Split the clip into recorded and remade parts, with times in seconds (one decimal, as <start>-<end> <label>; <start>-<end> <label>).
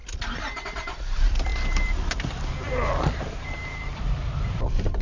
0.0-0.6 recorded; 0.6-5.0 remade